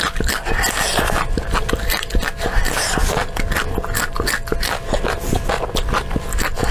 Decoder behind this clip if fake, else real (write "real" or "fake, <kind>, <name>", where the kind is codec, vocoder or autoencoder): real